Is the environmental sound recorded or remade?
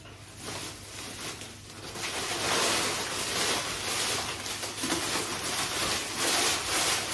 recorded